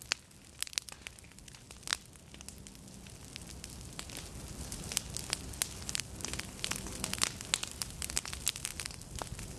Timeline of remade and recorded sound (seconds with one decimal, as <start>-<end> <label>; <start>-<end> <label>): 0.0-9.6 recorded

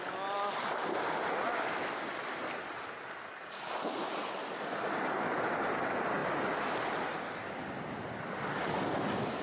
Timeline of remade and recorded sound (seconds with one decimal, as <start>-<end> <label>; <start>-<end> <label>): 0.0-9.4 recorded

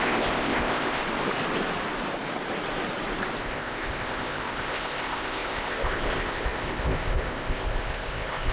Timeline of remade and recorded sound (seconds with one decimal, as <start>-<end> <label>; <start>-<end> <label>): 0.0-1.0 remade; 1.0-3.4 recorded; 3.4-8.5 remade